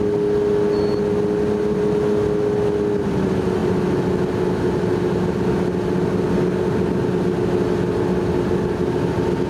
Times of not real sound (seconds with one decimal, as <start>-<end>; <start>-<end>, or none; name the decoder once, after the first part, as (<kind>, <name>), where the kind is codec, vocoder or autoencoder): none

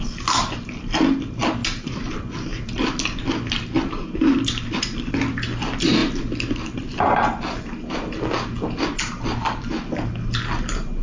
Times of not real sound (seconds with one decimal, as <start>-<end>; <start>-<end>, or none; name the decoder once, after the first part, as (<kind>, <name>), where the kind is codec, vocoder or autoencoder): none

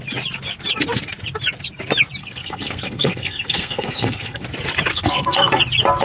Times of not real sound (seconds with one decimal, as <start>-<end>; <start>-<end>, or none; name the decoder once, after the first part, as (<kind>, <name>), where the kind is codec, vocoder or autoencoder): 2.2-4.4 (codec, SNAC); 4.9-5.6

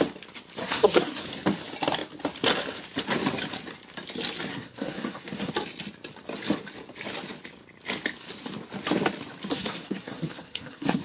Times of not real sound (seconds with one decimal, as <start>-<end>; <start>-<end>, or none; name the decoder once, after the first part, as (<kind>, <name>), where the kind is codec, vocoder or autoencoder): 0.6-1.2 (codec, SNAC); 4.5-5.5; 9.5-11.0

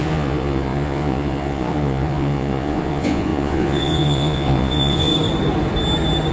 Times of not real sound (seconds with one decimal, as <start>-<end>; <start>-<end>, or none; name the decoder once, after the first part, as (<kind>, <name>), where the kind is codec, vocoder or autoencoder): 0.0-5.1 (vocoder, Vocos)

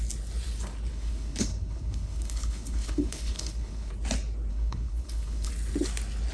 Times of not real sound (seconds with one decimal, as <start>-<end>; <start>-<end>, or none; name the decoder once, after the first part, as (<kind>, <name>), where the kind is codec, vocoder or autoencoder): 0.9-3.9 (codec, HILCodec); 4.5-5.5

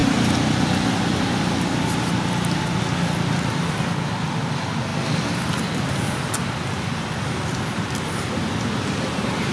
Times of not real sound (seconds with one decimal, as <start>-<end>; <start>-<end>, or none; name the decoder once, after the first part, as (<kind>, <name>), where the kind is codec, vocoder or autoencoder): none

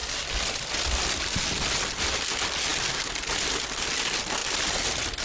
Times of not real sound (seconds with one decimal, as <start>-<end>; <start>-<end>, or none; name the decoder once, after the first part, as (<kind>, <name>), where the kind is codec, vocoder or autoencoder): 0.0-1.2 (vocoder, BigVGAN v2); 4.4-5.2